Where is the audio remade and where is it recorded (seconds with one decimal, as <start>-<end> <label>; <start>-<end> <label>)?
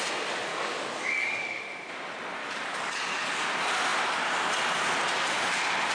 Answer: 0.0-0.5 recorded; 0.5-1.6 remade; 1.6-2.4 recorded; 2.4-3.4 remade; 3.4-5.9 recorded